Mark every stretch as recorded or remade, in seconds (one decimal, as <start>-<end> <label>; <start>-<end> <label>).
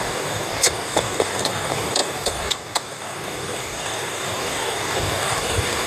0.0-5.9 remade